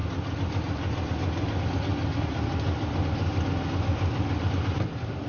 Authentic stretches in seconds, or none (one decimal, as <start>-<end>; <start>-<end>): 0.0-5.3